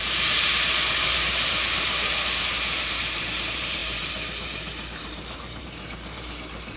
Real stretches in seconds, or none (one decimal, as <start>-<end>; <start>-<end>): none